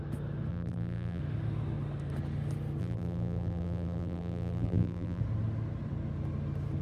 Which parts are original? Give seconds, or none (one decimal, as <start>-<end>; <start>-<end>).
0.0-0.5; 1.2-2.8; 5.2-6.8